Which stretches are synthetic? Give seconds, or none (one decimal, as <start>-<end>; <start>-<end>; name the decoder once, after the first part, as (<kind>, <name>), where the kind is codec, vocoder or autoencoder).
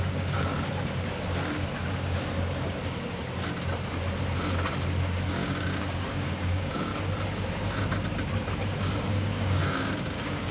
0.0-0.5 (codec, DAC); 5.3-6.9; 9.1-10.5